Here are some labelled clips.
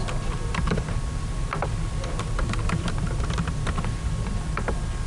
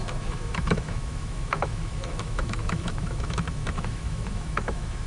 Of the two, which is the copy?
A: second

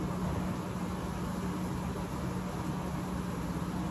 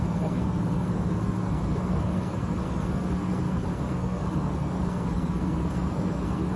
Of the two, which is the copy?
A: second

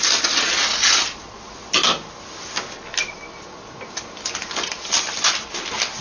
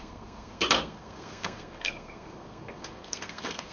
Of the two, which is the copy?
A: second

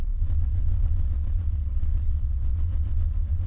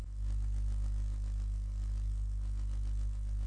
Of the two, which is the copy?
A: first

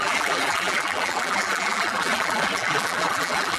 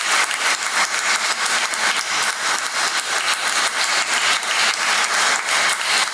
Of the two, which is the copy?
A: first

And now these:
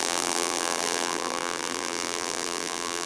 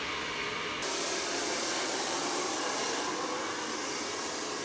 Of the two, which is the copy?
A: first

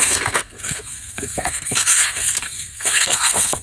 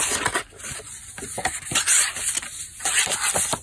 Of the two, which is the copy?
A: first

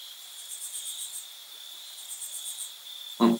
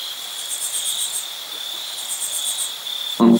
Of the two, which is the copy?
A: first